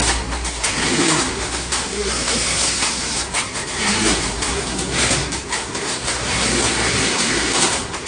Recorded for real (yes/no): no